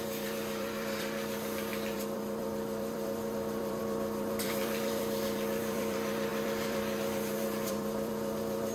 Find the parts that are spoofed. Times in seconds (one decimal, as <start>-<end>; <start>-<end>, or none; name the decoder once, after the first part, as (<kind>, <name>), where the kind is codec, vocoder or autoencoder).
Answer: 0.0-8.7 (vocoder, BigVGAN v2)